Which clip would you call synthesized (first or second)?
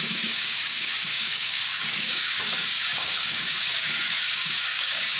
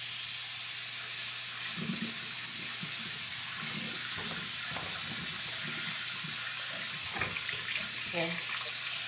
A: first